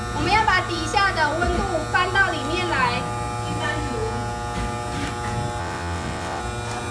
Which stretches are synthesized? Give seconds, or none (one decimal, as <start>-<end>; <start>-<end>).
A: 5.6-6.4